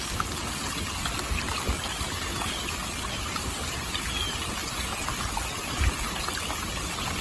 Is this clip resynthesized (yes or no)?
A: no